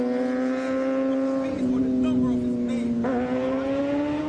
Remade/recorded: recorded